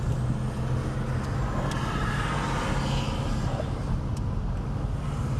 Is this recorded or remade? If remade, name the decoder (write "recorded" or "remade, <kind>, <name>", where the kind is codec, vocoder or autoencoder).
recorded